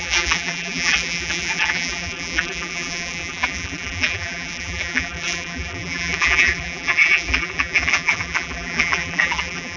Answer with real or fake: fake